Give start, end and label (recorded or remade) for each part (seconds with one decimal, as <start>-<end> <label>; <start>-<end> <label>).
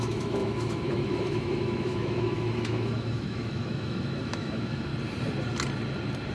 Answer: 0.0-4.9 remade; 4.9-6.3 recorded